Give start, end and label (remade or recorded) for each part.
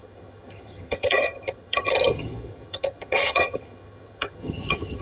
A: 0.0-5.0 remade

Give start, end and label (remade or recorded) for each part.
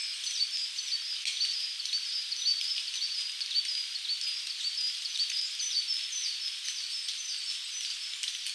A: 0.0-8.5 recorded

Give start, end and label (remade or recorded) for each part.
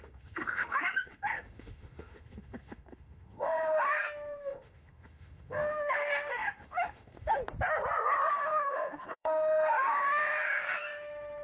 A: 0.0-7.4 remade; 7.4-8.3 recorded; 8.3-11.4 remade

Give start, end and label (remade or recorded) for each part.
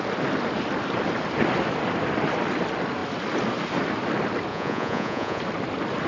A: 0.0-4.5 recorded; 4.5-5.4 remade; 5.4-6.1 recorded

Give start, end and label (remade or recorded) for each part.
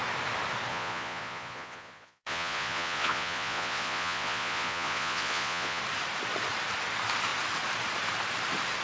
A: 0.0-0.7 recorded; 0.7-5.8 remade; 5.8-8.8 recorded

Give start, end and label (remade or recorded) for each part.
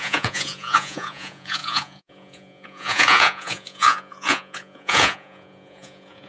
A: 0.0-6.3 remade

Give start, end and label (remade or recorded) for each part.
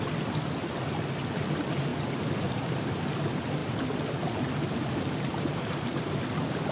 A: 0.0-1.9 recorded; 1.9-3.1 remade; 3.1-6.7 recorded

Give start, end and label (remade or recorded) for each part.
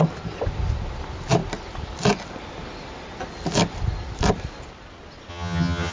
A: 0.0-5.3 recorded; 5.3-5.9 remade